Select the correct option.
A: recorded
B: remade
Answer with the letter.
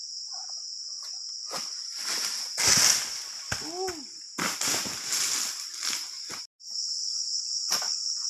A